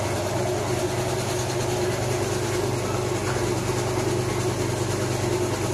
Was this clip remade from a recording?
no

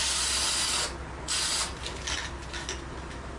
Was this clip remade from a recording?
no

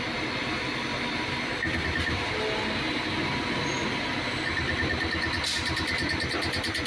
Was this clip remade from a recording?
no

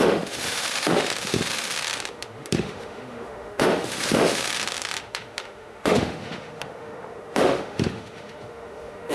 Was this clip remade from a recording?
yes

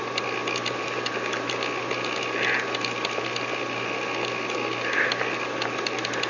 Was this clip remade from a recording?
no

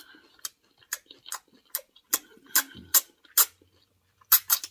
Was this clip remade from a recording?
no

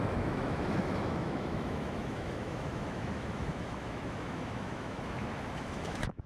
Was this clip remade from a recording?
yes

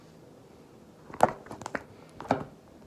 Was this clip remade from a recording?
no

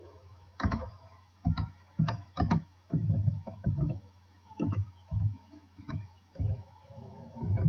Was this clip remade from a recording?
yes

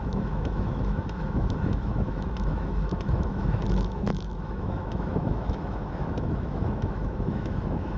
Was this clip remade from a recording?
yes